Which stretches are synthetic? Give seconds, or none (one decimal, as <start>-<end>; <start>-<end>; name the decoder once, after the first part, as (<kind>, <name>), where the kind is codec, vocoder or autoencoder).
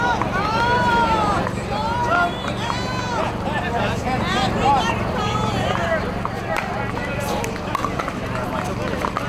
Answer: none